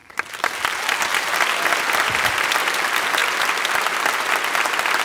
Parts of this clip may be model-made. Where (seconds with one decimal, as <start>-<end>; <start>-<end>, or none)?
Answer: 0.0-0.6